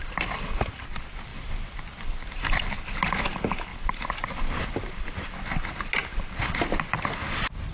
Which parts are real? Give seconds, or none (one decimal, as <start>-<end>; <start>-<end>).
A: 0.0-1.3; 1.8-3.7; 5.3-7.7